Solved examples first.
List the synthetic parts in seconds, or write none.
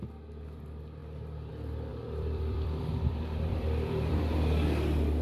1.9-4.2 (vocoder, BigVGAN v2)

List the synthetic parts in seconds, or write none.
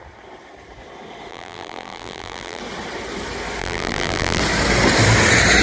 1.3-2.6 (vocoder, BigVGAN v2); 3.6-4.4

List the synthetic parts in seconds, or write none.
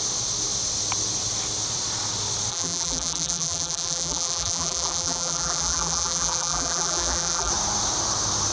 2.5-7.5 (vocoder, BigVGAN v2)